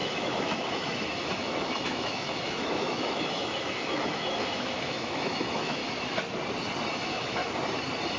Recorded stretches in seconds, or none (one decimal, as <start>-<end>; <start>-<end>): 5.8-6.9; 7.4-8.2